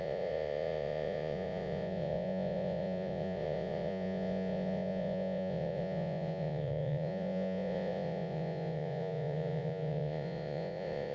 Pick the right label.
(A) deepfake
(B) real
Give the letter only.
A